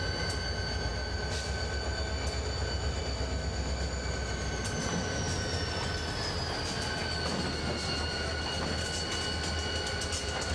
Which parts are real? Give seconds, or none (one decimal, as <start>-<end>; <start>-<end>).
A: 0.0-10.5